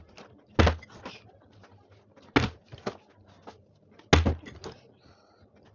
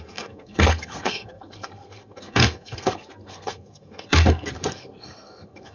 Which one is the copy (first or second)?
second